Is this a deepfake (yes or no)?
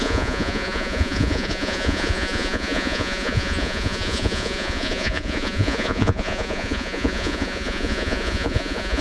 yes